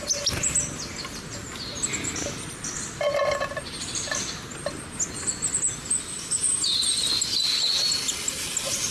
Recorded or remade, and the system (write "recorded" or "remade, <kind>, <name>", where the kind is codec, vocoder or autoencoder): recorded